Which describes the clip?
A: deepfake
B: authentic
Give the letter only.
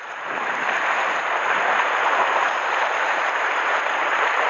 A